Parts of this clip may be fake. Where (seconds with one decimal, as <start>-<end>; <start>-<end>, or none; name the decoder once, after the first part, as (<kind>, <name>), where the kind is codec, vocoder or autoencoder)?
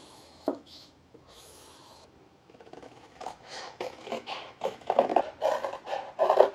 0.0-5.1 (autoencoder, DAC-VAE)